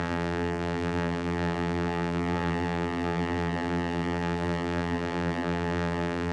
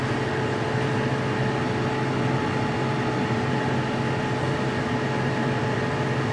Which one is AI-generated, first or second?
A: first